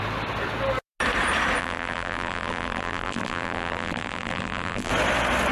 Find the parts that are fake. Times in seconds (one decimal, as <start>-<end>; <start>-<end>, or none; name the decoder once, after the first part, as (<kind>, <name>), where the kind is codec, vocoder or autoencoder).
1.6-4.9 (vocoder, BigVGAN v2)